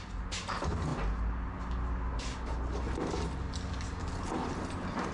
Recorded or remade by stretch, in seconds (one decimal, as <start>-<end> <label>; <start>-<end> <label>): 0.0-5.1 recorded